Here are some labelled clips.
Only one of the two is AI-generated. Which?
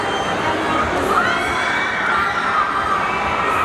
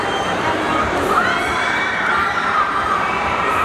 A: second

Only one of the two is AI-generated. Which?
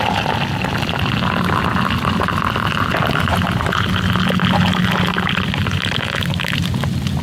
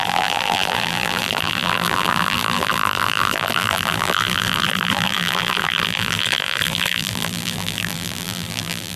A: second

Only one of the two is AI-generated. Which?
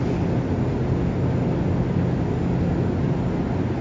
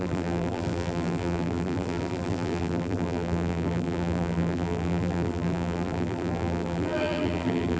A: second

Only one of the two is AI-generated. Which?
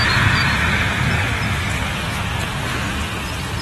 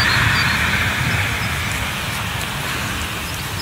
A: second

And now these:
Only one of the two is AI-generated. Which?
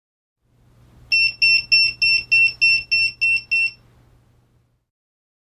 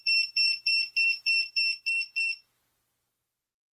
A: second